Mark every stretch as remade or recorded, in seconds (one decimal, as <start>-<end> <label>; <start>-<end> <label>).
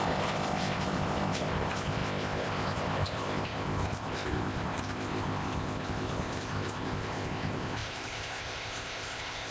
0.0-9.5 remade